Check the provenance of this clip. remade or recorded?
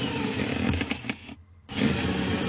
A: recorded